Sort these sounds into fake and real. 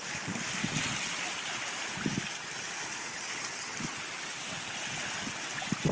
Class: real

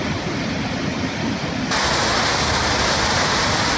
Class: real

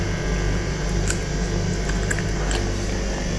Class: real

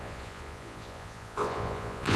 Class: fake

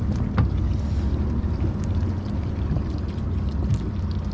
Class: real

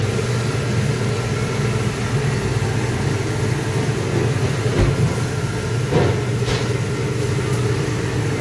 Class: real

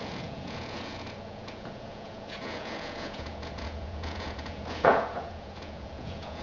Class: fake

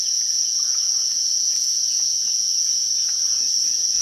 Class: fake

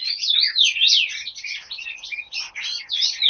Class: real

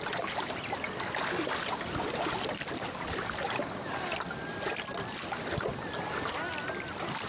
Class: real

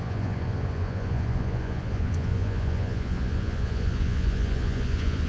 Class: fake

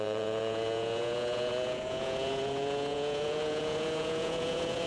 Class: fake